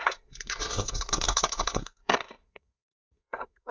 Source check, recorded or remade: remade